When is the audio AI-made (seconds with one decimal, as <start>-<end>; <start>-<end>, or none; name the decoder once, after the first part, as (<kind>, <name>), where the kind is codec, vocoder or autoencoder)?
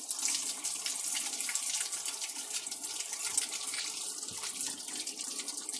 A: none